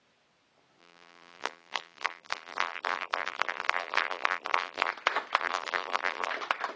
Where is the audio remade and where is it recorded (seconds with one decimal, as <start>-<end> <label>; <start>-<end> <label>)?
0.0-0.8 recorded; 0.8-4.9 remade; 4.9-5.4 recorded; 5.4-6.3 remade; 6.3-6.8 recorded